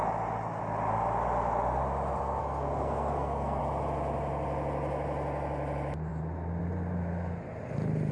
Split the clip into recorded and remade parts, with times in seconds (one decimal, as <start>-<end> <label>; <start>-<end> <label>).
0.0-2.4 recorded; 2.4-3.6 remade; 3.6-8.1 recorded